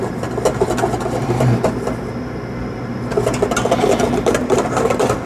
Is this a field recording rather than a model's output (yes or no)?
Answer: yes